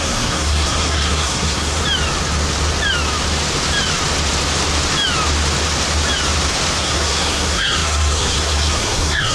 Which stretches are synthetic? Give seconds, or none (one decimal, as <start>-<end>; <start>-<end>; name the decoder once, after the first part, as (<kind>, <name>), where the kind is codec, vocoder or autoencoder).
0.0-1.8 (codec, SNAC); 6.8-9.3